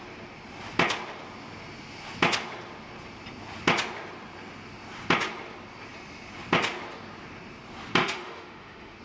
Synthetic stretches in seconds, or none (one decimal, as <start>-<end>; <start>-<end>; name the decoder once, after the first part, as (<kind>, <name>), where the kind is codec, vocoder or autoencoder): 8.0-9.0 (autoencoder, DAC-VAE)